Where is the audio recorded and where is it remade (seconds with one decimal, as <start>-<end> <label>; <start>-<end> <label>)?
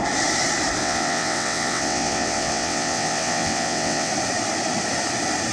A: 0.0-0.8 recorded; 0.8-4.1 remade; 4.1-5.5 recorded